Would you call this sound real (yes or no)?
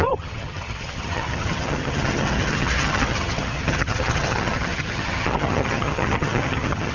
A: no